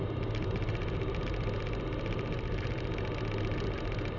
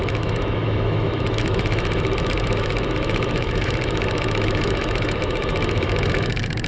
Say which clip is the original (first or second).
first